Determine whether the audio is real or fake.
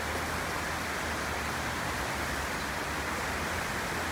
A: real